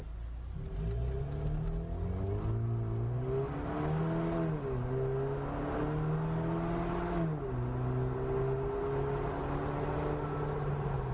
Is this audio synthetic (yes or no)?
no